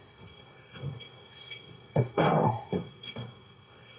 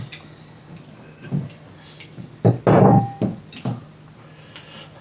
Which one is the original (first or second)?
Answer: second